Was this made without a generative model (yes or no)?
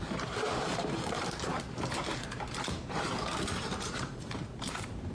no